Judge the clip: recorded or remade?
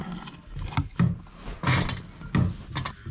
recorded